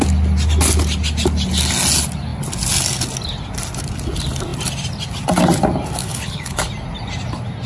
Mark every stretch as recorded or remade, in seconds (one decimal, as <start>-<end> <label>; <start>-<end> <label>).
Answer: 0.0-6.0 recorded; 6.0-6.6 remade; 6.6-7.7 recorded